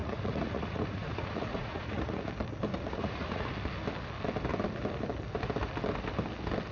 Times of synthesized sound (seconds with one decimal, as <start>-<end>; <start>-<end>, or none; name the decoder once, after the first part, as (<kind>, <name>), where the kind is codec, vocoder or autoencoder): 0.0-2.3 (vocoder, Vocos); 2.7-3.5